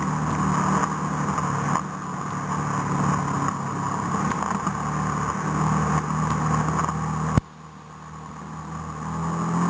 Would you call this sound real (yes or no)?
yes